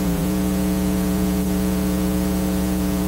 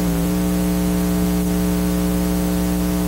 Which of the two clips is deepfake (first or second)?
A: first